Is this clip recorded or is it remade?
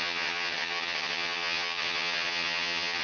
remade